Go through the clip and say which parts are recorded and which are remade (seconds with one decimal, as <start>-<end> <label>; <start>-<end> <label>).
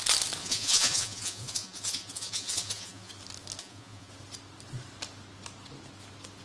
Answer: 0.0-0.4 recorded; 0.4-3.1 remade; 3.1-3.6 recorded; 3.6-4.1 remade; 4.1-6.4 recorded